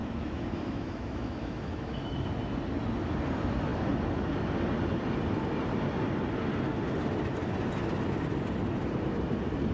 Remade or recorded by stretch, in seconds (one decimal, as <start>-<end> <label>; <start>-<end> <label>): 0.0-2.3 remade; 2.3-9.7 recorded